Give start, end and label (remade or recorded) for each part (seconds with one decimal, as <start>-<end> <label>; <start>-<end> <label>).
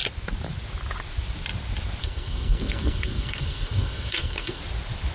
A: 0.0-2.0 recorded; 2.0-4.6 remade; 4.6-5.1 recorded